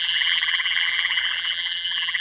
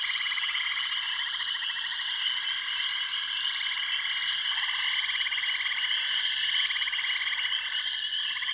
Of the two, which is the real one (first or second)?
second